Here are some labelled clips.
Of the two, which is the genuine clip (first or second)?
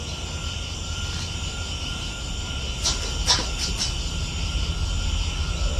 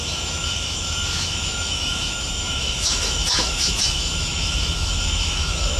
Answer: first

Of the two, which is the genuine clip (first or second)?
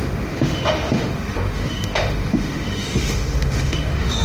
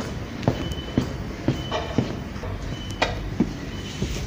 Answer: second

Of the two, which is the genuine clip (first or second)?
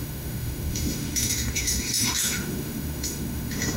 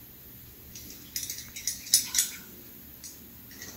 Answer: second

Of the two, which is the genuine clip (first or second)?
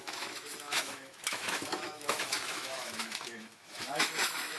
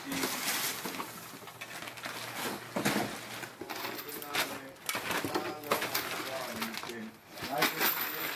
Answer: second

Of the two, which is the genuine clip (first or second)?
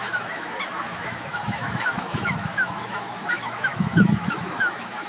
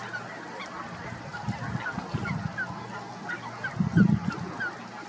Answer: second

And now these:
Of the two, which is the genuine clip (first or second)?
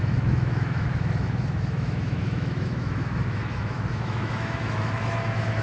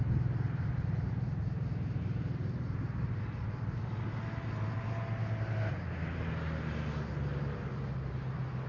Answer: second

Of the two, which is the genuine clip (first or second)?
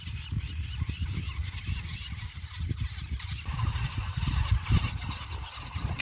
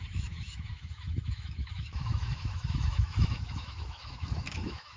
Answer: first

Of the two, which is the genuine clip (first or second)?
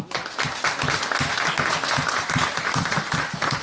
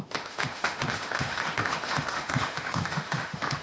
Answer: first